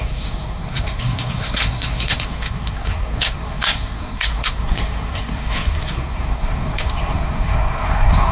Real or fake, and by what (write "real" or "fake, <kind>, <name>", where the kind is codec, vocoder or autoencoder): fake, codec, SNAC